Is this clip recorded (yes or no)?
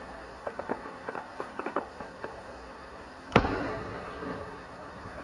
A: no